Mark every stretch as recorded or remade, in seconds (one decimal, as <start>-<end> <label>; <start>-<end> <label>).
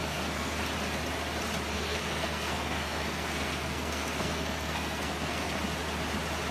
0.0-0.6 remade; 0.6-1.7 recorded; 1.7-5.6 remade; 5.6-6.5 recorded